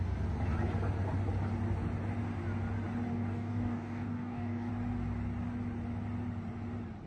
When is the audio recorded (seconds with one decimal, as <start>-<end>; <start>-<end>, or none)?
0.0-3.1; 4.7-7.1

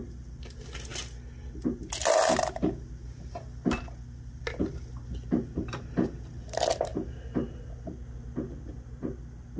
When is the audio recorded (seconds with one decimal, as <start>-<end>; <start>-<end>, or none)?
0.0-9.6

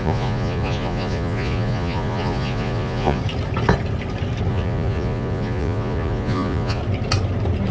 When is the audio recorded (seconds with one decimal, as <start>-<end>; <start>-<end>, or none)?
3.2-4.5; 6.8-7.7

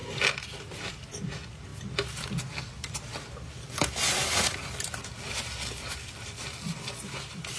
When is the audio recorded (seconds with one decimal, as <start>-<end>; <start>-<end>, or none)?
0.0-7.6

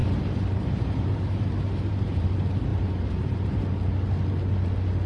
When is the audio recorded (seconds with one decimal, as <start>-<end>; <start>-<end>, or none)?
2.3-2.7; 3.6-5.1

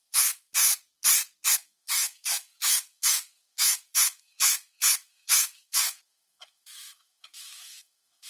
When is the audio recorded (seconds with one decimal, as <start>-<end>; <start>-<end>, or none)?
0.7-1.5